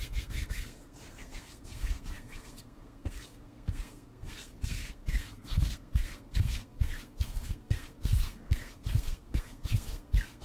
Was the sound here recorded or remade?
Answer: remade